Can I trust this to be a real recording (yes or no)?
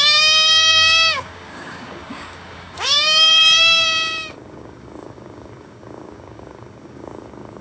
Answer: no